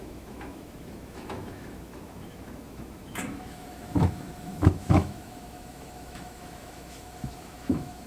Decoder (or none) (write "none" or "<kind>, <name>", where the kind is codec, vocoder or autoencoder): autoencoder, DAC-VAE